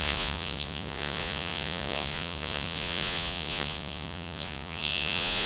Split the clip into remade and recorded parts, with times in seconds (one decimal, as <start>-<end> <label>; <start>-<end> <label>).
0.0-5.5 remade